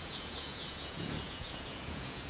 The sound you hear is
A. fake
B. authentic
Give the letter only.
A